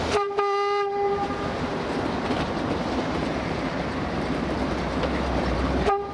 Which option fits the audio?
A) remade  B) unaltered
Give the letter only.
A